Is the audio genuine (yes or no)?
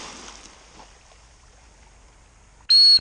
yes